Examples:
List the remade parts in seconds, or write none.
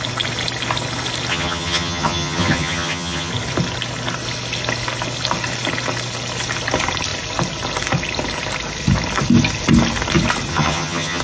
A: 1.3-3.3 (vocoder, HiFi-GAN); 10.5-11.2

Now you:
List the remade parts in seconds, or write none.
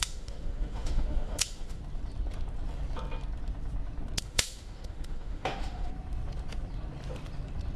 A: 0.0-1.8 (autoencoder, DAC-VAE); 4.2-5.9